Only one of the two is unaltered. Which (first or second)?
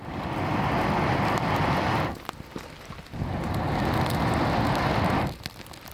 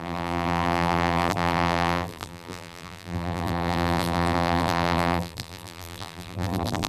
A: first